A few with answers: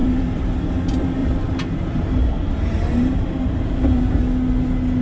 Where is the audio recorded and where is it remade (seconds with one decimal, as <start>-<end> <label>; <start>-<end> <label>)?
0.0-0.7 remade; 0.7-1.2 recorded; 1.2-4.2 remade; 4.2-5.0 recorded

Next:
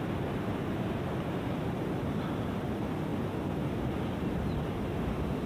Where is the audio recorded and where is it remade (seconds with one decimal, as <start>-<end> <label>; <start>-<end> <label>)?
0.0-3.1 remade; 3.1-5.5 recorded

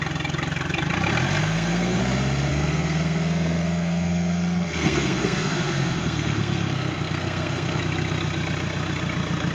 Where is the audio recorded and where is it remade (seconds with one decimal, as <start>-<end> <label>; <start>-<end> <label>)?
0.0-1.4 recorded; 1.4-2.0 remade; 2.0-2.5 recorded; 2.5-7.8 remade; 7.8-9.5 recorded

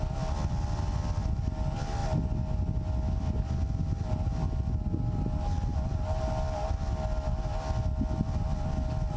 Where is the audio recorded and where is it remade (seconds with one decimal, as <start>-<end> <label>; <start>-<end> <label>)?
0.0-5.7 recorded; 5.7-6.3 remade; 6.3-9.2 recorded